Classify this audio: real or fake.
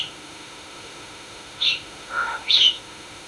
fake